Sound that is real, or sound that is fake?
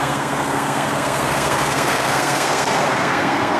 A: fake